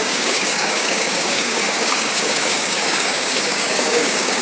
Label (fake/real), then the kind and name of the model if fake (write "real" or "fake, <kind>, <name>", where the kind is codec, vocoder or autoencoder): fake, codec, DAC